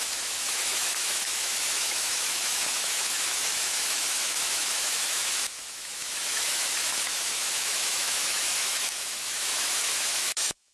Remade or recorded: remade